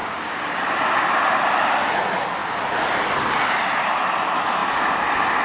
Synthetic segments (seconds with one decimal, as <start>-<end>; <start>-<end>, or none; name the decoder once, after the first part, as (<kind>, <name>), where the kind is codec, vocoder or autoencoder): none